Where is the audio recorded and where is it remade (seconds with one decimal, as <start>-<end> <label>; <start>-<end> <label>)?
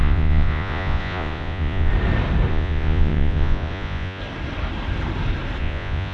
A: 0.0-1.9 remade; 1.9-2.5 recorded; 2.5-4.2 remade; 4.2-5.6 recorded; 5.6-6.1 remade